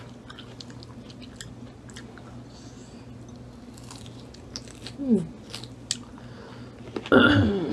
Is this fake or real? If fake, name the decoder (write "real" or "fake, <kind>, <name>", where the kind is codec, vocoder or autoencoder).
real